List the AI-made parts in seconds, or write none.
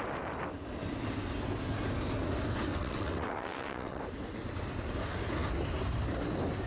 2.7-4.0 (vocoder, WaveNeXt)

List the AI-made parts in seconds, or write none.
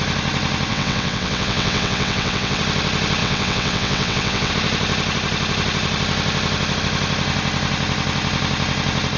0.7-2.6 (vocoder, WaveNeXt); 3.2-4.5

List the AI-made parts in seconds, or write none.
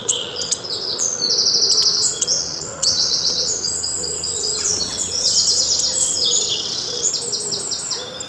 0.0-1.2 (vocoder, WaveNeXt); 1.9-5.6; 6.0-7.1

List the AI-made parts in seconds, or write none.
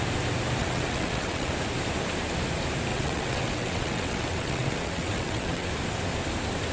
0.6-1.5 (vocoder, WaveNeXt); 2.9-5.7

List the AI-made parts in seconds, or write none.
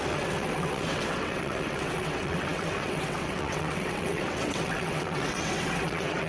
0.0-6.3 (vocoder, WaveNeXt)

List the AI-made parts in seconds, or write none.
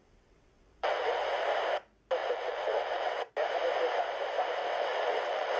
0.0-1.2 (vocoder, WaveNeXt); 2.2-3.3; 4.6-5.6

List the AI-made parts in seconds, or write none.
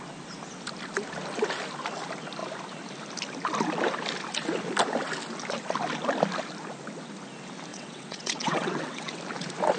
7.7-9.2 (vocoder, WaveNeXt)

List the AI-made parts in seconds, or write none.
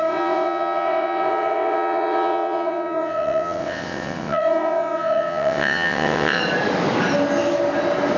0.0-6.4 (vocoder, WaveNeXt)